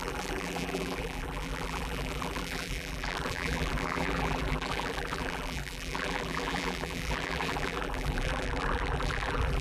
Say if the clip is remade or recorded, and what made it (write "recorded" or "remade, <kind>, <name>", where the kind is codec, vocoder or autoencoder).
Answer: remade, vocoder, BigVGAN v2